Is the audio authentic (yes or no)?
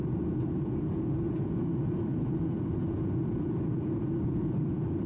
no